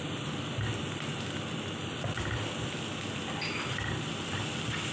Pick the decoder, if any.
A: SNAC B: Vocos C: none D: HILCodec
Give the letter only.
C